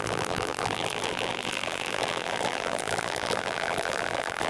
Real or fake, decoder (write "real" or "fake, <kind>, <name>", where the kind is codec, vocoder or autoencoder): fake, vocoder, BigVGAN v2